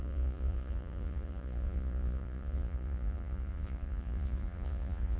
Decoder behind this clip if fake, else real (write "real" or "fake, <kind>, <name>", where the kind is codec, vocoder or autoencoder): fake, vocoder, Vocos